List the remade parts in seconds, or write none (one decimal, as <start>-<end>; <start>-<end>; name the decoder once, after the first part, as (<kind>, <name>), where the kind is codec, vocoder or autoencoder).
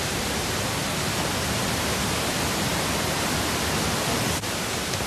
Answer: none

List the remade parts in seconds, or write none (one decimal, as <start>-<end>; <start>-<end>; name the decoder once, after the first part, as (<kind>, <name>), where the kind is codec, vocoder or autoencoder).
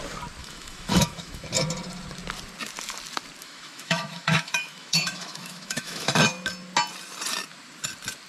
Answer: 0.4-1.5 (autoencoder, DAC-VAE); 3.4-6.2